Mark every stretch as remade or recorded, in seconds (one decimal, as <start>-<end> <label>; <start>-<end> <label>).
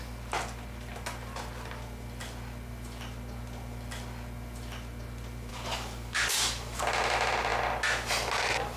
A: 0.0-5.5 recorded; 5.5-6.8 remade; 6.8-8.8 recorded